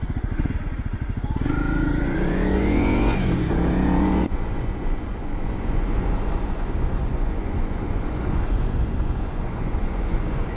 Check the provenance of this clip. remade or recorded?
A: remade